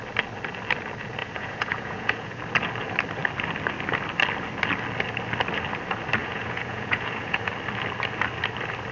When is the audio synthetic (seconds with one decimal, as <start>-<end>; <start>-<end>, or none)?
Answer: 1.2-2.4; 6.2-7.5